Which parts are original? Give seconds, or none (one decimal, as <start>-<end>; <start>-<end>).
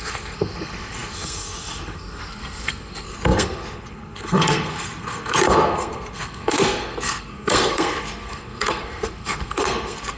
none